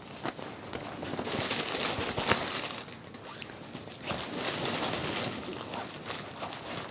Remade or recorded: recorded